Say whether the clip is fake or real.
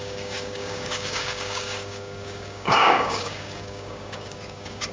fake